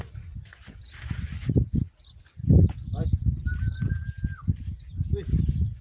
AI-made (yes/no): no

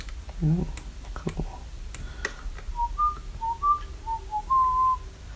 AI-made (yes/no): no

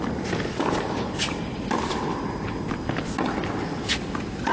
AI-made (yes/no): no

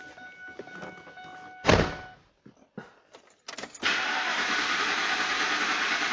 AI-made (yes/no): no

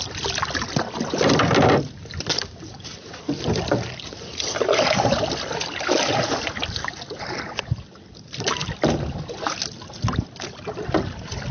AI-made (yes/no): no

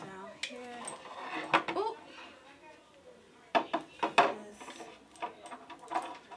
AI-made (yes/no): no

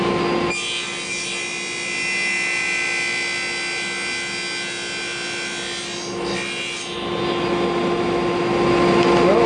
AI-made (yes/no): no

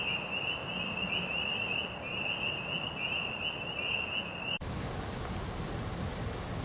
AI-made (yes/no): no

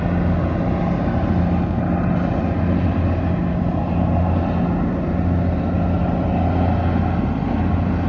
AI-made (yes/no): no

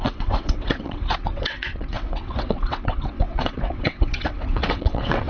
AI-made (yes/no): yes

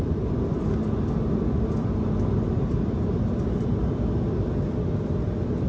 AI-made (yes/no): no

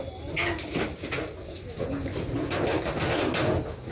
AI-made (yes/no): no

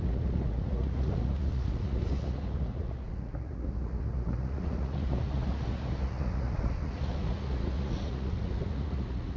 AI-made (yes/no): yes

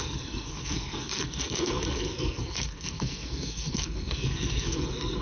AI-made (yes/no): yes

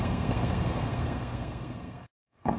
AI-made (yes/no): yes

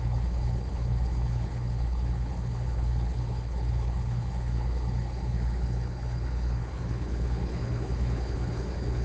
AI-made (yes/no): yes